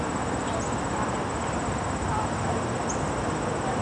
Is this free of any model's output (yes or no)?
yes